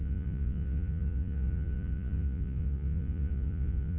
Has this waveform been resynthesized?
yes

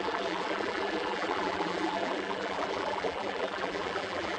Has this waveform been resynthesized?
yes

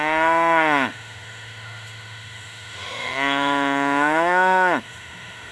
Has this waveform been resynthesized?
yes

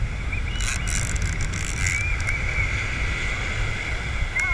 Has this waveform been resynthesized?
no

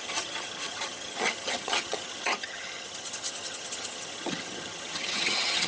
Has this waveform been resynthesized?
yes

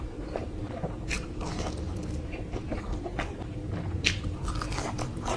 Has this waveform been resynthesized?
yes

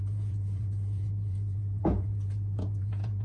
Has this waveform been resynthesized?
yes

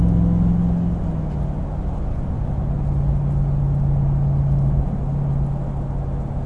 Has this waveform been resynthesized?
no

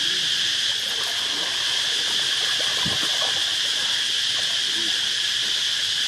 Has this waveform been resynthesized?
no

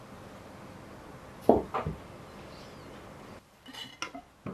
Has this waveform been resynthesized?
no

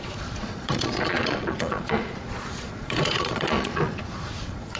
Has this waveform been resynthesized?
yes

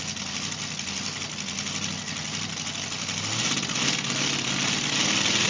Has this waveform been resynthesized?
no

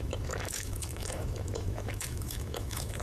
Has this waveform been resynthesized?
yes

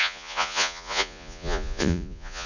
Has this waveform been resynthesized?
yes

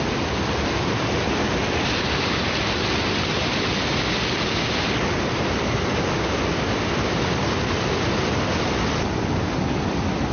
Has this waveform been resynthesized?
no